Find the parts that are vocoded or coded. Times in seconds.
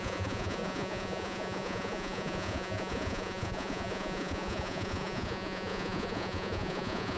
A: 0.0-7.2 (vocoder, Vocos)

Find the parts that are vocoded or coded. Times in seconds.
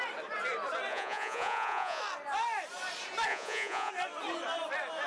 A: 0.9-2.0 (vocoder, Vocos); 3.3-3.9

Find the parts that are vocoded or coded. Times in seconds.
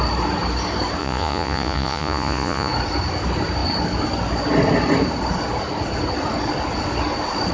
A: 1.0-2.7 (vocoder, Vocos)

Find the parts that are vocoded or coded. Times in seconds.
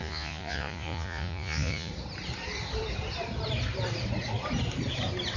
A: 0.0-1.9 (vocoder, Vocos)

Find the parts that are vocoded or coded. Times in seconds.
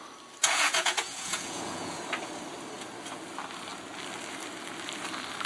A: 0.4-2.0 (vocoder, Vocos)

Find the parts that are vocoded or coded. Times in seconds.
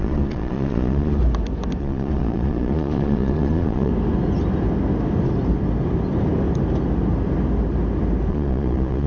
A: 0.0-1.2 (vocoder, Vocos); 1.8-3.9; 8.3-9.1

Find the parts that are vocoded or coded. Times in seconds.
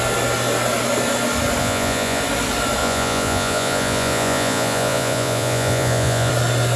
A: 1.6-2.2 (vocoder, Vocos); 2.8-6.3